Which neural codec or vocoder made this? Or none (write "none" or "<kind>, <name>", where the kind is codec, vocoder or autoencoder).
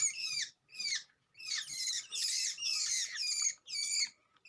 none